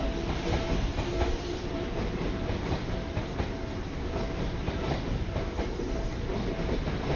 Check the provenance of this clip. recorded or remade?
recorded